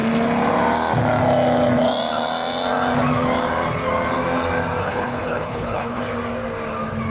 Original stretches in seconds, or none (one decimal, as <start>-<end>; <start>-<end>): 0.0-4.8; 6.0-7.1